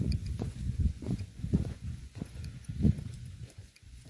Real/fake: fake